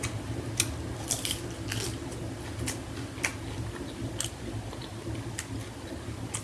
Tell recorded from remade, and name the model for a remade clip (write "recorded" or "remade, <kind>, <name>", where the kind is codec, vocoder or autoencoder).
recorded